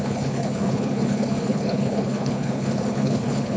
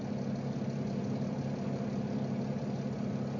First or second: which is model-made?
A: first